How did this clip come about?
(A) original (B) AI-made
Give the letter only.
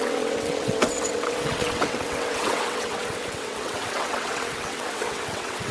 B